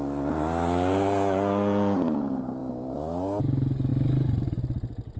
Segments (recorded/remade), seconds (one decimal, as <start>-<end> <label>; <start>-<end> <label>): 0.0-5.2 recorded